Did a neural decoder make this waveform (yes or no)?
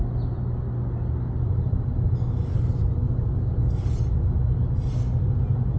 no